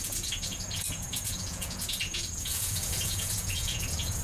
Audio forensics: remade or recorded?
remade